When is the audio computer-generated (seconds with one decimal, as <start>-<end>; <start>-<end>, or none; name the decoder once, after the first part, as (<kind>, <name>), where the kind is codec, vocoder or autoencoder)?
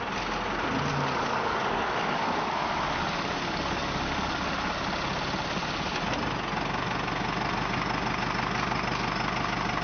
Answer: 0.9-4.7 (codec, DAC)